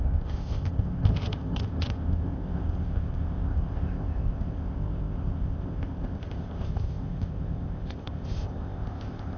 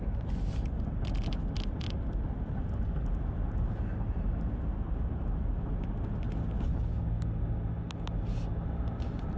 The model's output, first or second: first